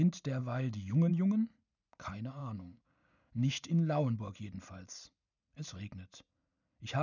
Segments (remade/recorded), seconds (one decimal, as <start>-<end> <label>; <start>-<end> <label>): 0.0-0.4 recorded; 0.4-1.1 remade; 1.1-2.4 recorded; 2.4-4.2 remade; 4.2-7.0 recorded